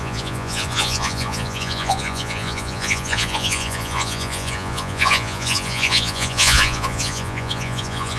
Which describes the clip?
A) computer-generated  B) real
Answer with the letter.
A